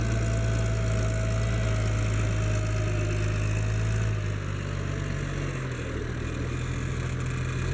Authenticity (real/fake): real